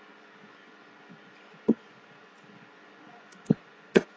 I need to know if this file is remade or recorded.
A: remade